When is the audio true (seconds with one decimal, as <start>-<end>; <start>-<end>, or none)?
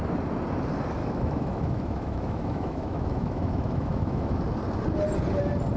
0.0-1.0; 4.4-5.8